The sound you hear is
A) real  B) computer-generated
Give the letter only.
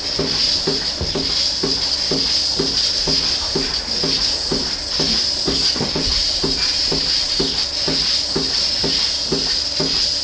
A